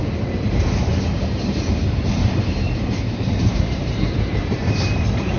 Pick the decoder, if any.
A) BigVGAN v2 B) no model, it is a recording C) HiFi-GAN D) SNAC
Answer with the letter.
A